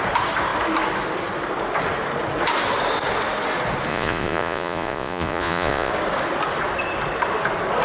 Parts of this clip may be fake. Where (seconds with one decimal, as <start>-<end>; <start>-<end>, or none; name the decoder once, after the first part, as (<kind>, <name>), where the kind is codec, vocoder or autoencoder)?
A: 3.9-5.9 (vocoder, Vocos)